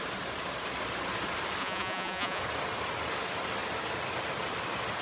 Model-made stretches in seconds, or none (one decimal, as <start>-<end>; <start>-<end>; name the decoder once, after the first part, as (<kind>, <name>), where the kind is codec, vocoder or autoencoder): 1.6-2.4 (vocoder, Vocos)